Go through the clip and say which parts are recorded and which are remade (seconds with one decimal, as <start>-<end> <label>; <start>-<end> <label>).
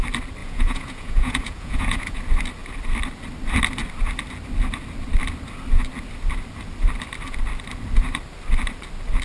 0.0-0.4 recorded; 0.4-2.2 remade; 2.2-9.2 recorded